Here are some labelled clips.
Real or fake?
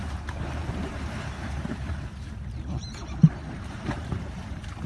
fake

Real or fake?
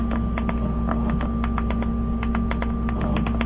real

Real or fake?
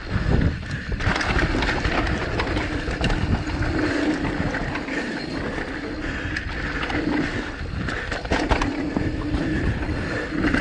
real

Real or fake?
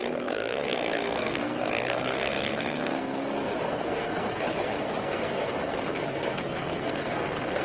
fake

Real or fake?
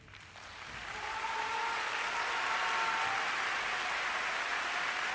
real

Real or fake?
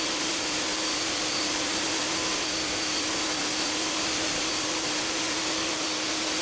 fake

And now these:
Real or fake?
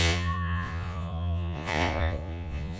fake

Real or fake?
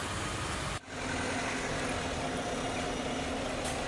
real